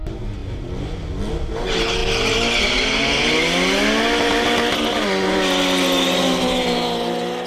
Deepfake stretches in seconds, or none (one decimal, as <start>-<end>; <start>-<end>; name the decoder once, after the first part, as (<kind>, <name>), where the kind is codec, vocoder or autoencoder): none